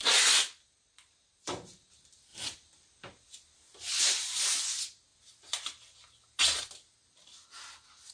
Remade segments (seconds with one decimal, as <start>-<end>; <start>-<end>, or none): none

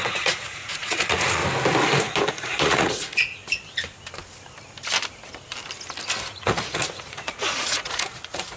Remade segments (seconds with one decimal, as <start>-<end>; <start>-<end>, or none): 0.0-1.4; 2.3-3.4; 6.2-8.6

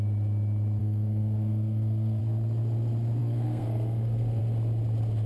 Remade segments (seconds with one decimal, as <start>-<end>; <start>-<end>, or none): 0.8-2.2; 3.2-4.4

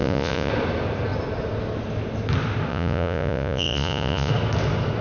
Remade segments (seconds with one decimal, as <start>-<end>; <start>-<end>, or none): 0.0-0.5; 2.7-4.3

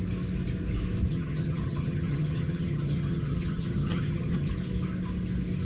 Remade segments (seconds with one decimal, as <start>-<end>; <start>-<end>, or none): 1.1-4.5